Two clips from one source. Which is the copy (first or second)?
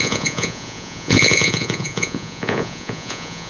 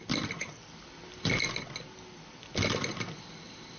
first